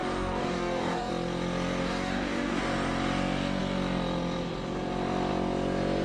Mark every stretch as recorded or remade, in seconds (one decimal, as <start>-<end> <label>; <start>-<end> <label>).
0.0-1.1 remade; 1.1-1.8 recorded; 1.8-2.6 remade; 2.6-6.0 recorded